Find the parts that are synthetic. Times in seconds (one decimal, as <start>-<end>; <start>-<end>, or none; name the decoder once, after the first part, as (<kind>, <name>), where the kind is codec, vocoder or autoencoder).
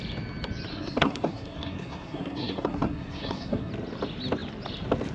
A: 0.7-3.7 (codec, SNAC)